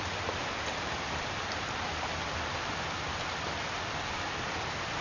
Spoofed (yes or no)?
yes